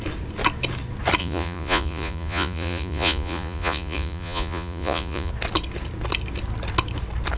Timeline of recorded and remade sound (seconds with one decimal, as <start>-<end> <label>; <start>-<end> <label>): 0.0-1.2 recorded; 1.2-5.3 remade; 5.3-7.4 recorded